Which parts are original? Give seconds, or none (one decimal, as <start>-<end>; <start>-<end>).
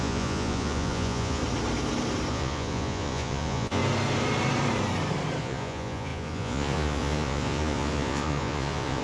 1.4-2.3; 3.8-5.4